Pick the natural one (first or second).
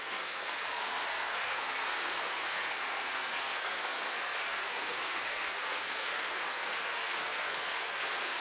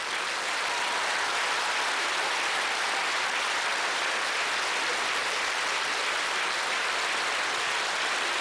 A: second